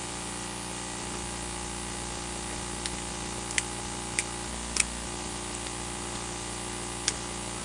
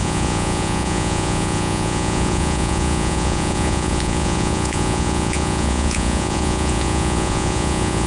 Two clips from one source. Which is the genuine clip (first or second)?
first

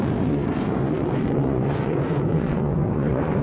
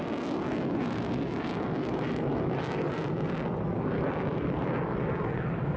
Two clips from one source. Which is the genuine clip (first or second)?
second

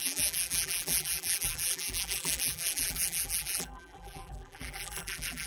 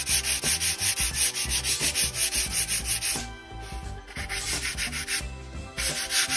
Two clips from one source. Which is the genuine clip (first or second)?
second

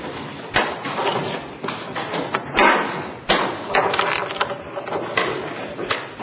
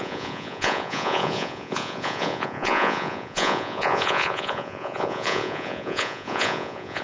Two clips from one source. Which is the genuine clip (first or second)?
first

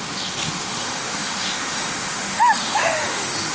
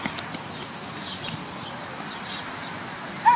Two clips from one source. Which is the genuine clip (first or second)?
second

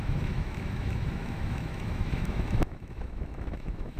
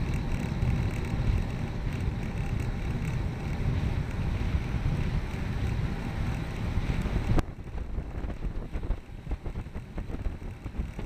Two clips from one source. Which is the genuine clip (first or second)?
second